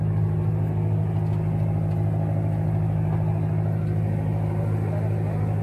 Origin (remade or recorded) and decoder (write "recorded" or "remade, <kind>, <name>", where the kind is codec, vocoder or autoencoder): recorded